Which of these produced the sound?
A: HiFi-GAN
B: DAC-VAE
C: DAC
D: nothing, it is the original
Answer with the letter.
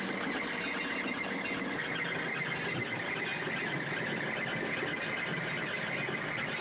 D